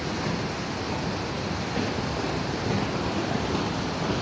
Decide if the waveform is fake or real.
real